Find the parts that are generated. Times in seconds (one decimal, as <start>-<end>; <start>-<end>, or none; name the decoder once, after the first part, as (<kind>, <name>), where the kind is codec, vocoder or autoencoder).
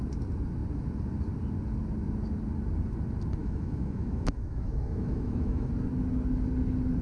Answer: 3.4-5.7 (autoencoder, DAC-VAE)